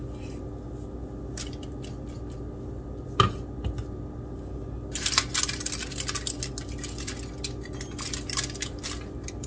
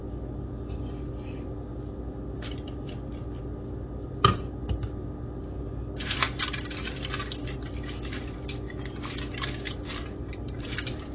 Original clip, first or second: first